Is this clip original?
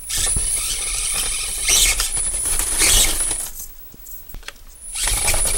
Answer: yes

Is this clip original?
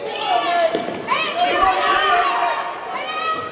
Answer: yes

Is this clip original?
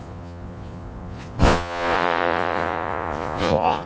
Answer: no